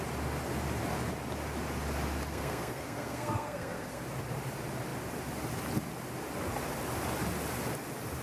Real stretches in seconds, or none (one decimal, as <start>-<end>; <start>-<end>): 0.0-2.3; 4.0-8.2

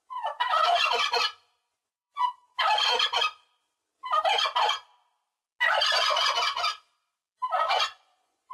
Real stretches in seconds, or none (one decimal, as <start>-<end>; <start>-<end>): 2.2-6.0; 6.7-7.7

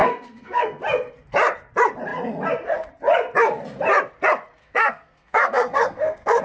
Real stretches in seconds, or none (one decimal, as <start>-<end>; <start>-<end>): 0.8-4.6